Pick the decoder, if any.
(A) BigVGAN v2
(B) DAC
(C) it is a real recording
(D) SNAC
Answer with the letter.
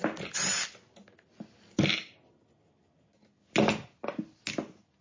C